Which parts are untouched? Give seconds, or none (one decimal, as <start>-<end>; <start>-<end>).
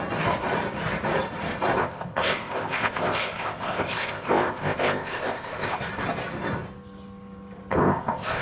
0.0-1.8; 5.8-7.7